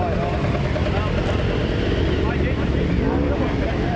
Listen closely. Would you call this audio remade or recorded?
recorded